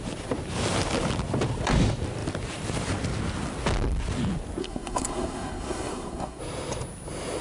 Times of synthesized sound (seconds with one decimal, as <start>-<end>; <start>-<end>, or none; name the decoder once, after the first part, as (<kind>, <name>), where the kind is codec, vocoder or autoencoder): 4.6-6.4 (codec, SNAC)